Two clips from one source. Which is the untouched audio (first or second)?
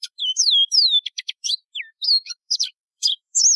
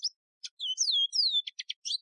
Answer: second